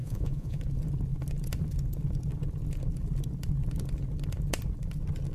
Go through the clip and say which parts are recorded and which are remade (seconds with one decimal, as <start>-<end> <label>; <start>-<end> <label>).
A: 0.0-0.6 remade; 0.6-5.3 recorded